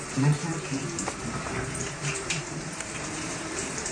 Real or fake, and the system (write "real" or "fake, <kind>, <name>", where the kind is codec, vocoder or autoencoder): fake, vocoder, BigVGAN v2